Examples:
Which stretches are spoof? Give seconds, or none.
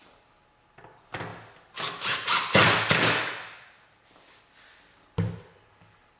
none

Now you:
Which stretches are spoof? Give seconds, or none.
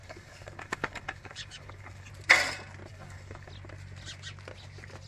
0.0-2.1 (codec, DAC); 2.9-3.5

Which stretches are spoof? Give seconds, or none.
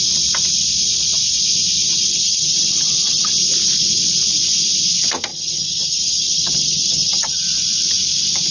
2.1-3.3 (vocoder, HiFi-GAN); 5.3-7.4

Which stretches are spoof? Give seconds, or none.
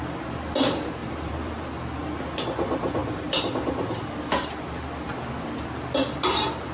1.0-1.6 (vocoder, BigVGAN v2); 3.0-4.2